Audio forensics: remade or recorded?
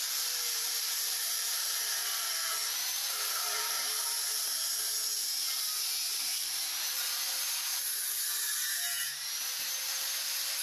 remade